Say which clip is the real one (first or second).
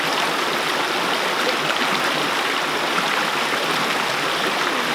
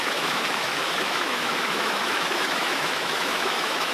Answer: first